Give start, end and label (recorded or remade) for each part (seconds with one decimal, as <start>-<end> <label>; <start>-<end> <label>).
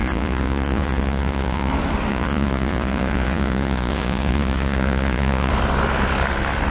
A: 0.0-1.7 remade; 1.7-2.1 recorded; 2.1-5.5 remade; 5.5-6.7 recorded